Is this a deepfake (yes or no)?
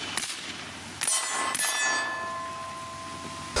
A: no